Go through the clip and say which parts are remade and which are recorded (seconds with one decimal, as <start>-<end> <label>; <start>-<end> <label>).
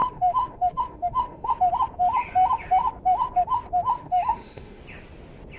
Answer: 0.0-1.5 remade; 1.5-4.0 recorded; 4.0-4.8 remade; 4.8-5.6 recorded